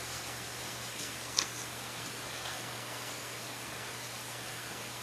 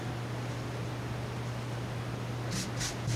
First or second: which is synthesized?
first